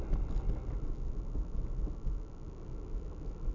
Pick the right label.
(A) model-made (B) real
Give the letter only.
B